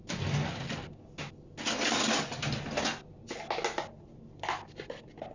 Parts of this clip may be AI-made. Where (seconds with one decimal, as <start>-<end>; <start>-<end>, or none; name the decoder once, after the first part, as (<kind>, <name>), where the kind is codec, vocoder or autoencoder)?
none